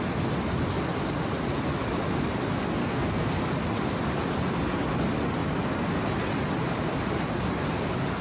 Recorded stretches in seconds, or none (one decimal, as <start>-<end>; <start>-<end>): 0.0-2.8; 3.4-8.2